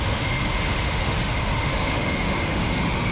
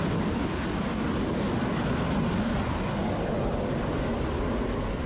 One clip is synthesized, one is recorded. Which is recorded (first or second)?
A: second